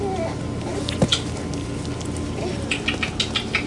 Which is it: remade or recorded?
recorded